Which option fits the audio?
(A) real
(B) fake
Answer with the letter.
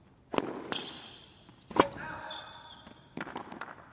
A